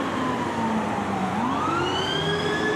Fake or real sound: real